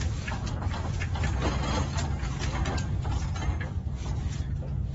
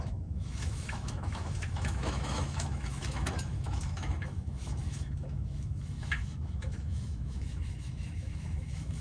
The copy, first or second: second